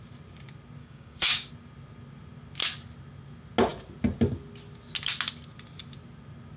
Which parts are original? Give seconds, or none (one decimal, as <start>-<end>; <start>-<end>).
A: 0.0-0.8; 1.5-6.6